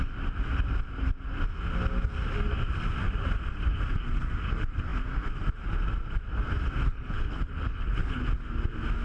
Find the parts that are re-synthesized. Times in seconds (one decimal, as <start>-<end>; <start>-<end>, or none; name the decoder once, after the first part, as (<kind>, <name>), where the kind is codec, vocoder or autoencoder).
6.9-8.2 (codec, HILCodec)